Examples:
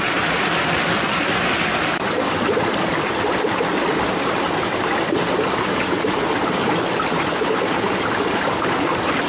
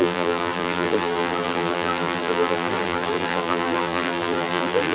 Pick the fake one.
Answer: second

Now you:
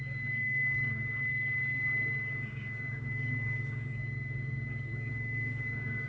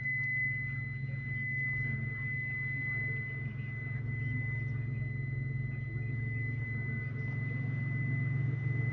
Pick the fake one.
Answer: first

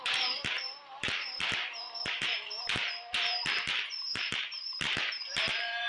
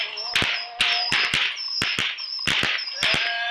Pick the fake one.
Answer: first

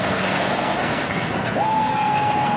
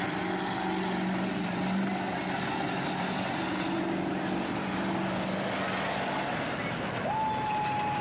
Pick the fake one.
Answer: first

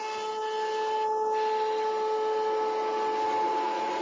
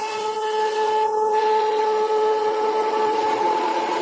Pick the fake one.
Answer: second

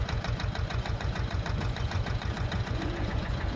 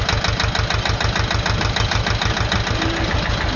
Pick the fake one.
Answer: first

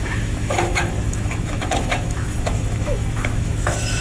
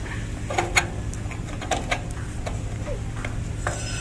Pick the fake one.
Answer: first